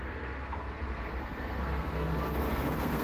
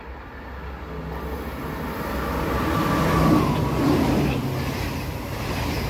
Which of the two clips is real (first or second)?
second